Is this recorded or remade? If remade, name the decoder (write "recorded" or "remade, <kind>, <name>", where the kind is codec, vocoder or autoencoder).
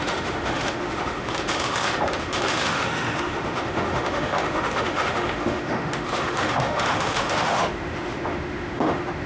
remade, autoencoder, DAC-VAE